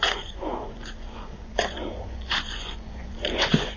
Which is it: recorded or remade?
remade